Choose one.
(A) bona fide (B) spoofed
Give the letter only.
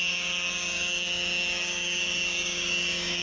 B